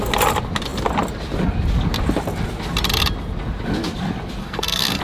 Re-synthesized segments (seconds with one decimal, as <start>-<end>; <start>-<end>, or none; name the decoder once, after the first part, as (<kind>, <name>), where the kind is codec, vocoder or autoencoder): 4.4-5.0 (codec, SNAC)